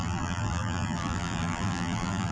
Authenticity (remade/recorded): remade